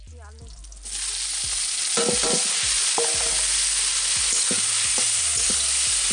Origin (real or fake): real